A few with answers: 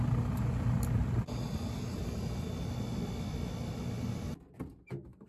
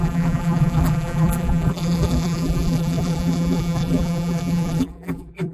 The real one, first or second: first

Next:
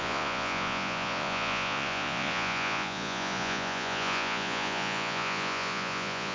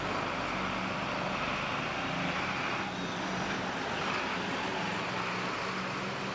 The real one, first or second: second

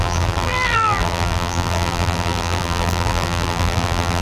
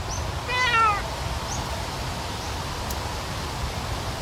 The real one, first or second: second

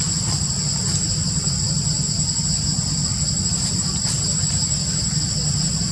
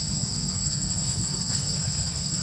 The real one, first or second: first